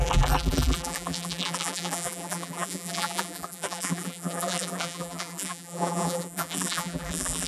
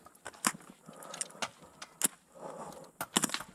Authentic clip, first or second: second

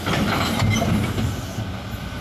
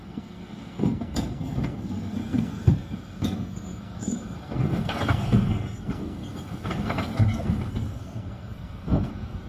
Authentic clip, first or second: first